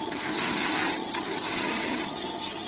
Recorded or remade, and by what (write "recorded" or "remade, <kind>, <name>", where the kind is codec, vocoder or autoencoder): remade, vocoder, HiFi-GAN